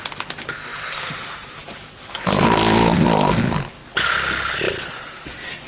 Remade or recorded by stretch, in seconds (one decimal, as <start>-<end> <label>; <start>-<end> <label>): 0.0-5.7 recorded